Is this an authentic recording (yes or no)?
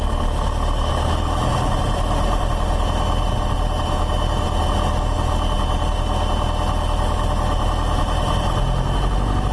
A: yes